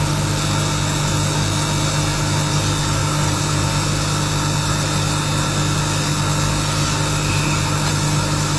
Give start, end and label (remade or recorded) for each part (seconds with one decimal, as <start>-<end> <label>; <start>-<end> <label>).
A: 0.0-8.6 recorded